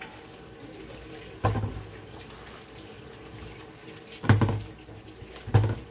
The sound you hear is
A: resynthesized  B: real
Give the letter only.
B